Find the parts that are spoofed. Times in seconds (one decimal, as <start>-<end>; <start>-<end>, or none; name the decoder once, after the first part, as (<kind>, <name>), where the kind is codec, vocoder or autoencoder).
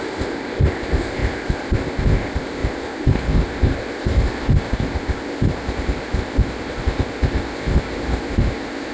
0.0-8.9 (codec, ZipCodec)